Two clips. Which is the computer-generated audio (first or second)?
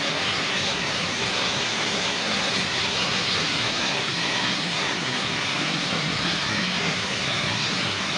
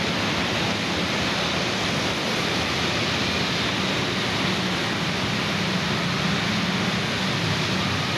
first